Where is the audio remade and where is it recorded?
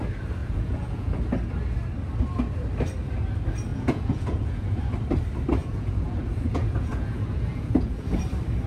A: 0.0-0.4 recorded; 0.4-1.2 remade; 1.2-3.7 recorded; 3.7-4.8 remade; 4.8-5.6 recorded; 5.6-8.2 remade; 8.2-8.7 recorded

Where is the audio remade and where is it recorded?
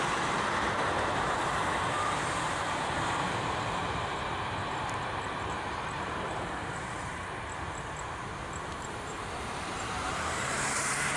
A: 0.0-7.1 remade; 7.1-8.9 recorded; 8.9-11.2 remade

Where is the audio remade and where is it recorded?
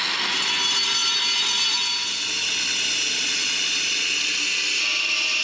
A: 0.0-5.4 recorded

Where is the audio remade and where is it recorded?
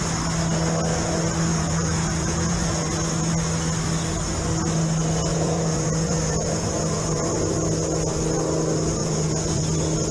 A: 0.0-1.5 recorded; 1.5-3.3 remade; 3.3-5.3 recorded; 5.3-7.3 remade; 7.3-9.0 recorded; 9.0-9.6 remade; 9.6-10.1 recorded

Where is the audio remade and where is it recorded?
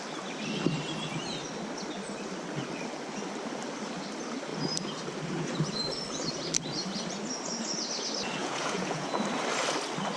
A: 0.0-8.4 recorded; 8.4-9.2 remade; 9.2-10.2 recorded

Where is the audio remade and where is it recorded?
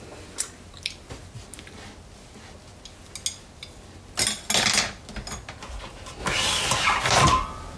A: 0.0-7.8 recorded